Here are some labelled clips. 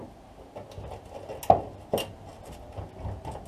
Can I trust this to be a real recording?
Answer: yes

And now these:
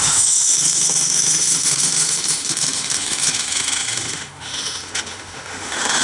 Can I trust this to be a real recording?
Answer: no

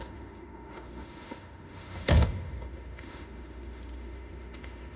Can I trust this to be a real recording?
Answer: no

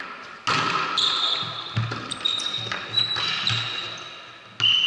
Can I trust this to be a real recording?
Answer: yes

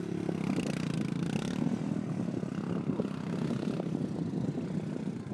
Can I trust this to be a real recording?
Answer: yes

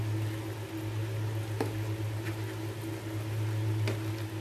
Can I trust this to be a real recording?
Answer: yes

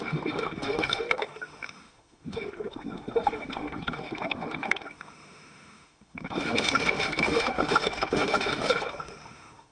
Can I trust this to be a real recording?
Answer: no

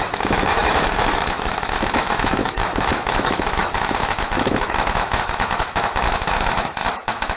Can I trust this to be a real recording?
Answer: no